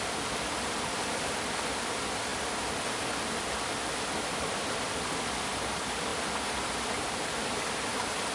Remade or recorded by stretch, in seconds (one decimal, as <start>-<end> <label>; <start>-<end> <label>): 0.0-8.3 recorded